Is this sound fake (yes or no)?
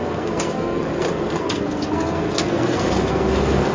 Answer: yes